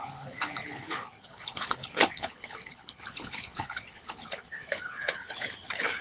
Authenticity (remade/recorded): remade